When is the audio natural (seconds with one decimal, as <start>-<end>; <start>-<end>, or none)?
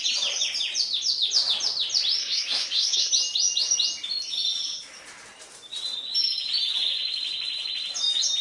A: 0.0-2.2; 3.1-8.4